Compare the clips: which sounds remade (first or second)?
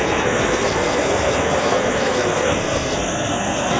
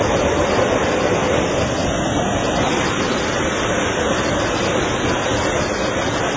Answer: first